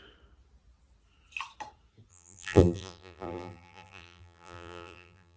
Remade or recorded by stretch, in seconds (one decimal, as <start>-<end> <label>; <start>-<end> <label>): 0.0-2.1 recorded; 2.1-5.4 remade

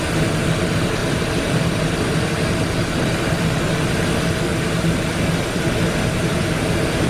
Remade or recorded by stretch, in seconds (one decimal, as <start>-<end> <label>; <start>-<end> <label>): 0.0-1.0 recorded; 1.0-1.8 remade; 1.8-4.5 recorded; 4.5-5.2 remade; 5.2-7.1 recorded

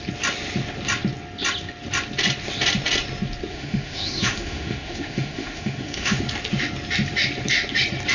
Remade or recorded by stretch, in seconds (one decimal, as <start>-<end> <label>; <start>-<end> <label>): 0.0-3.5 recorded; 3.5-6.2 remade; 6.2-8.1 recorded

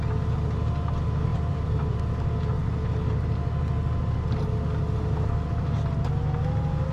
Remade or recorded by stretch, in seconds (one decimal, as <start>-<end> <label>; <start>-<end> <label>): 0.0-1.3 recorded; 1.3-2.0 remade; 2.0-6.9 recorded

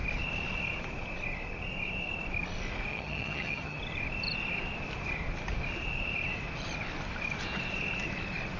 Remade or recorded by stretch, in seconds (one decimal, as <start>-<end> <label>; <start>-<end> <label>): 0.0-2.9 recorded; 2.9-3.8 remade; 3.8-8.6 recorded